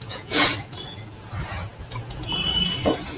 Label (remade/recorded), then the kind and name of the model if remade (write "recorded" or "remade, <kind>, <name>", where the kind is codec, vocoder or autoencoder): remade, vocoder, Vocos